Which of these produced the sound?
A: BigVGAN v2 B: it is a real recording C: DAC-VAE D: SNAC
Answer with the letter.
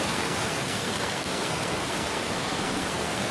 D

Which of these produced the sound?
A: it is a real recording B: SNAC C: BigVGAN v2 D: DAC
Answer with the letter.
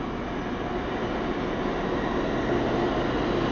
A